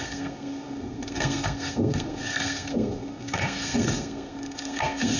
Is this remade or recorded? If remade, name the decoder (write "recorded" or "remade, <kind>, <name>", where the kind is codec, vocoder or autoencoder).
remade, codec, SNAC